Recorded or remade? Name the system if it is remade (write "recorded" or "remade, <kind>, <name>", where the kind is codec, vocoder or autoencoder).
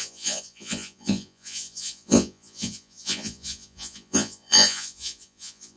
remade, vocoder, Vocos